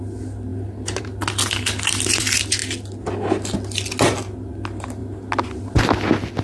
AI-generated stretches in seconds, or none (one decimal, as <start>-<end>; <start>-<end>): none

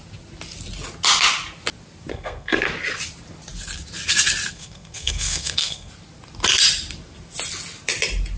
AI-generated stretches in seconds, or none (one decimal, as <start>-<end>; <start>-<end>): 2.1-2.7; 4.5-5.9

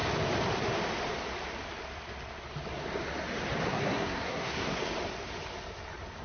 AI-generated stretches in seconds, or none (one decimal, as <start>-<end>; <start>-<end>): 3.7-4.8

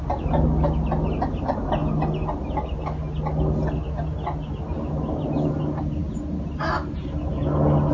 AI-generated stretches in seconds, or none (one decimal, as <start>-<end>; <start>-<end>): none

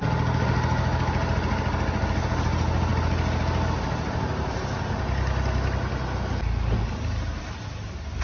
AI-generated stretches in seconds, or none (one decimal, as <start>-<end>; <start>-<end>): none

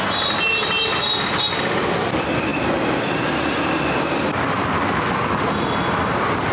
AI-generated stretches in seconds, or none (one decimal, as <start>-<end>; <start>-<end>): none

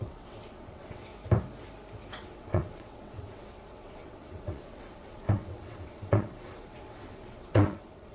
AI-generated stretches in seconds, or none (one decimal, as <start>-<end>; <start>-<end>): 0.0-1.1; 2.2-8.1

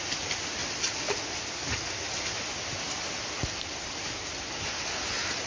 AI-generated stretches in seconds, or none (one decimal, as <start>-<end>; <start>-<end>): none